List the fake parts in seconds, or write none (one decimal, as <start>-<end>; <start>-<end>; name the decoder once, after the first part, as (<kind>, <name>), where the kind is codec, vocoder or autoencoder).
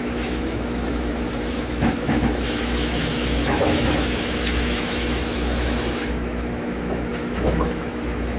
0.0-8.4 (autoencoder, DAC-VAE)